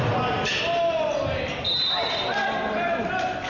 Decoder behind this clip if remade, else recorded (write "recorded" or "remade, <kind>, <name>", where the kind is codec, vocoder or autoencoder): recorded